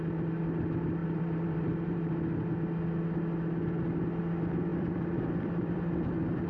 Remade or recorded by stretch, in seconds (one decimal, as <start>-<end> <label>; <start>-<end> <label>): 0.0-1.0 recorded; 1.0-2.1 remade; 2.1-4.7 recorded; 4.7-6.5 remade